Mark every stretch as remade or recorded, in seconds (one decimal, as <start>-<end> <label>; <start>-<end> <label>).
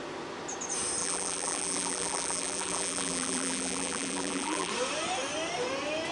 0.0-1.0 recorded; 1.0-4.7 remade; 4.7-6.1 recorded